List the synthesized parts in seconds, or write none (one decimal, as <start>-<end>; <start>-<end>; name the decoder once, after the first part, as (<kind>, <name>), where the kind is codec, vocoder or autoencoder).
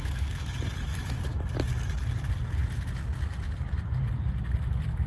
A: 0.0-0.5 (autoencoder, DAC-VAE); 0.9-1.4